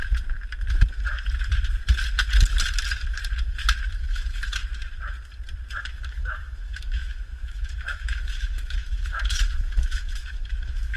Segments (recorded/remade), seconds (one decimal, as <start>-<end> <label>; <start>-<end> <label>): 0.0-4.0 recorded; 4.0-4.6 remade; 4.6-5.8 recorded; 5.8-11.0 remade